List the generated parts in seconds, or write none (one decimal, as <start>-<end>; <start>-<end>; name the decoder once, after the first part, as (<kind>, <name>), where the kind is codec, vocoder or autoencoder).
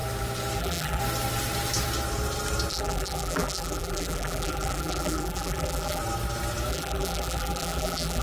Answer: 0.6-1.0 (vocoder, BigVGAN v2); 2.7-6.0; 6.7-8.2